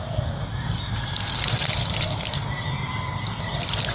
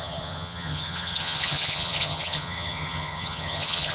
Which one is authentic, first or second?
first